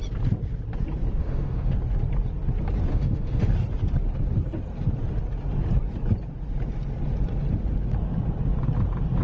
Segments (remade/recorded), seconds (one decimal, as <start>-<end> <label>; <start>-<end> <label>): 0.0-1.2 recorded; 1.2-1.7 remade; 1.7-2.9 recorded; 2.9-3.5 remade; 3.5-9.2 recorded